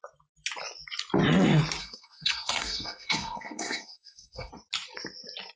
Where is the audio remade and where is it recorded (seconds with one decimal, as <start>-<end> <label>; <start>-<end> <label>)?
0.0-1.8 recorded; 1.8-4.5 remade; 4.5-5.6 recorded